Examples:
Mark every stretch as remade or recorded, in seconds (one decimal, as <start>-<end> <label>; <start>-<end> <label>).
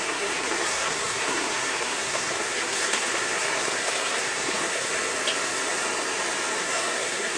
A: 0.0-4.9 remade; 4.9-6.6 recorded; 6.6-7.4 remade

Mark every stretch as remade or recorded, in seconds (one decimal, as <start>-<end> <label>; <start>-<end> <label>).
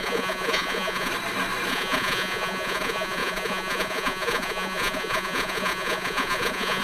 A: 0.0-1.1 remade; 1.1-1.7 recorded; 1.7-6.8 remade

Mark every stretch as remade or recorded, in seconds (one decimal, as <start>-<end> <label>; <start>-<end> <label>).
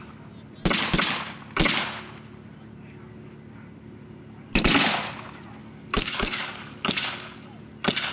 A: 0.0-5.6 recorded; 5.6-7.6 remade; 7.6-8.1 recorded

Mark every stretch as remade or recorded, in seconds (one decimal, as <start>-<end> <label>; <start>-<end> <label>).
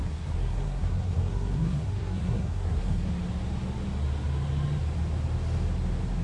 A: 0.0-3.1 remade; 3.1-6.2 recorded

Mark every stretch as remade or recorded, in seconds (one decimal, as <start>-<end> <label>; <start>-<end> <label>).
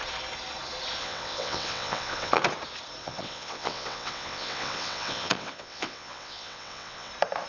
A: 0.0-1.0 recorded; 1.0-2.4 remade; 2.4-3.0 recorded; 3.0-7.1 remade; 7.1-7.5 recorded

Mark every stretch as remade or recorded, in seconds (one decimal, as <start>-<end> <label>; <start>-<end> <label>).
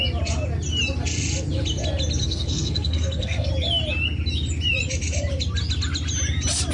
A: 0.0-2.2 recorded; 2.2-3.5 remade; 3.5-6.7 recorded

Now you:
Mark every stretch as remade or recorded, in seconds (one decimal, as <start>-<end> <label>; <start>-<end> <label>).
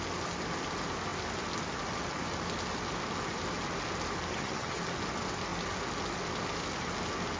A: 0.0-4.3 recorded; 4.3-4.8 remade; 4.8-7.4 recorded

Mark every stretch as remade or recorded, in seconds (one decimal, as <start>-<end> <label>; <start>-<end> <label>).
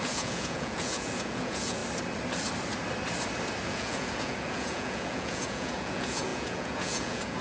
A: 0.0-1.8 remade; 1.8-3.7 recorded; 3.7-7.4 remade